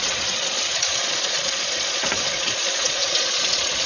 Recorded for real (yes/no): no